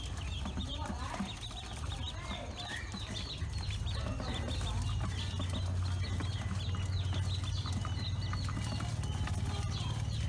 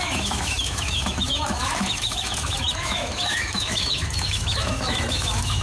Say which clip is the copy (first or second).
second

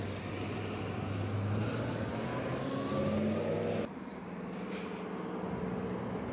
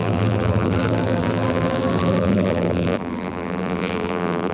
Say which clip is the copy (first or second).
second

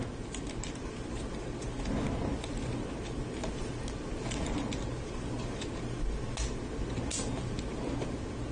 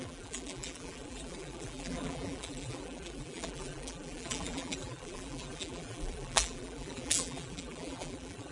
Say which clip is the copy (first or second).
second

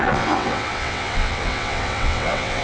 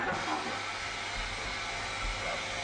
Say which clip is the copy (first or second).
first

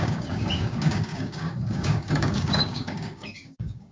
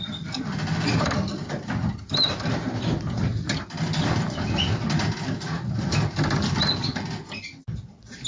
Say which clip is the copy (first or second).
first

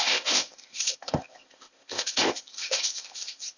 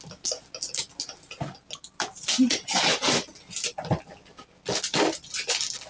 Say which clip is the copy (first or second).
first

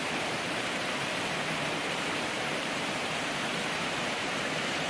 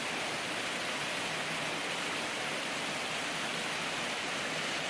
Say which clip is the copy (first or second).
first